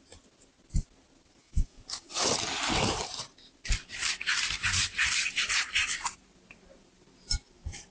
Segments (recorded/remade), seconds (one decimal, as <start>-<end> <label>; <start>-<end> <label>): 0.0-1.4 recorded; 1.4-2.3 remade; 2.3-7.9 recorded

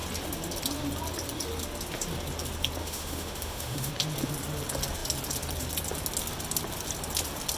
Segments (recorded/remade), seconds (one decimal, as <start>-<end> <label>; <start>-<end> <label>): 0.0-2.8 recorded; 2.8-3.9 remade; 3.9-7.6 recorded

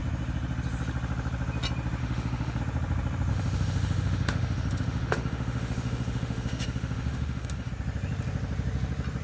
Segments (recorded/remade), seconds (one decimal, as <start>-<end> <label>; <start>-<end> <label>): 0.0-2.0 recorded; 2.0-2.6 remade; 2.6-3.3 recorded; 3.3-7.7 remade; 7.7-9.2 recorded

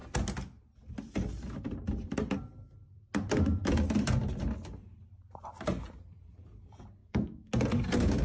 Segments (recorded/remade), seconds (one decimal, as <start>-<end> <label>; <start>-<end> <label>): 0.0-7.0 recorded; 7.0-7.5 remade; 7.5-8.2 recorded

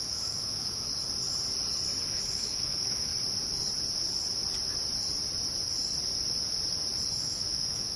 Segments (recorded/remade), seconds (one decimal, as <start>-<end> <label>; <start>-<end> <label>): 0.0-0.9 remade; 0.9-2.1 recorded; 2.1-3.1 remade; 3.1-7.2 recorded; 7.2-8.0 remade

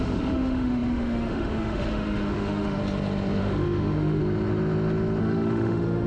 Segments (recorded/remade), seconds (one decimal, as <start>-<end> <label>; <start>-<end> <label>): 0.0-2.8 remade; 2.8-3.4 recorded; 3.4-4.2 remade; 4.2-5.2 recorded; 5.2-6.1 remade